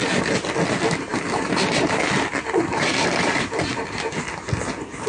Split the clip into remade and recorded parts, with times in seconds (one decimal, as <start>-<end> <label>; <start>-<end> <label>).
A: 0.0-1.1 recorded; 1.1-4.2 remade; 4.2-5.1 recorded